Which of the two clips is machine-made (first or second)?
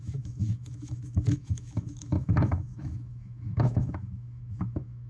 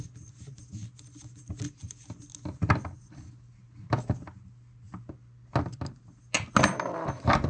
first